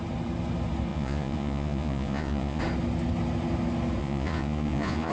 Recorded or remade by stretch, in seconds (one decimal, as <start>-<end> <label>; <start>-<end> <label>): 0.0-0.9 recorded; 0.9-2.6 remade; 2.6-4.0 recorded; 4.0-5.1 remade